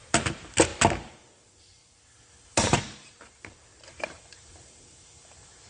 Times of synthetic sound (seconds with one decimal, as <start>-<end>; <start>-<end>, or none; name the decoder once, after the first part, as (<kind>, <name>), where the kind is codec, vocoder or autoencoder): 0.0-0.7 (vocoder, BigVGAN v2); 2.5-5.7